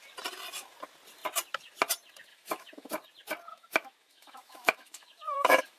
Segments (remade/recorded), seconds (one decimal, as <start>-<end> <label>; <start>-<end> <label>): 0.0-2.3 recorded; 2.3-2.9 remade; 2.9-3.5 recorded; 3.5-5.8 remade